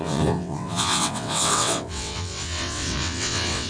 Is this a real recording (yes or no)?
no